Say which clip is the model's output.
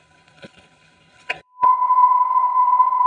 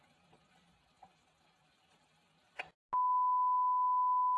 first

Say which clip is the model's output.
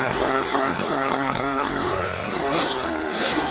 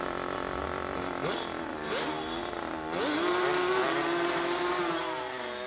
first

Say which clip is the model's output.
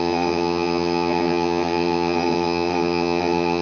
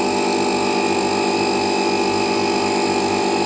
first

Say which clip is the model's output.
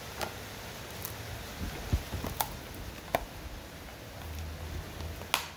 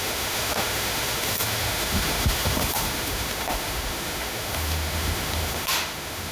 second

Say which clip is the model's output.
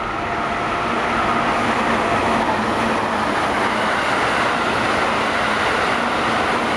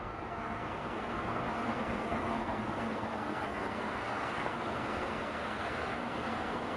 second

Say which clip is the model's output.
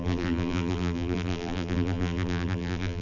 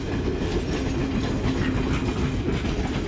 first